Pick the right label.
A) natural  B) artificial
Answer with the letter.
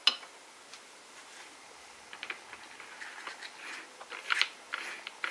A